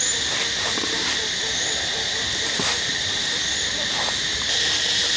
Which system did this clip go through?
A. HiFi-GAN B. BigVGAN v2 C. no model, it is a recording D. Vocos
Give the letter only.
C